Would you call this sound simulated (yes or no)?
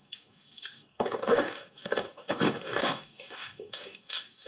yes